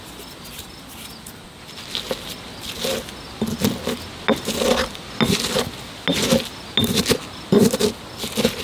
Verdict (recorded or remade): recorded